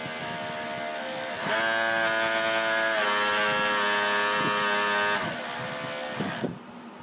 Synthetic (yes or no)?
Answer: no